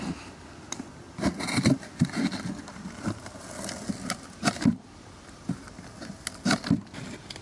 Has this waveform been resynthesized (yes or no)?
no